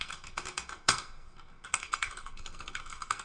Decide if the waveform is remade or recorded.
remade